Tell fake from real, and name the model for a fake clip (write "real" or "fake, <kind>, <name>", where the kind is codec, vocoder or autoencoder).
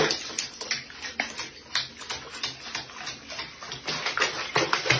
real